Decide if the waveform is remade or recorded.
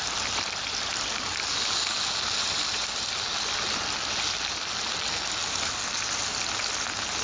recorded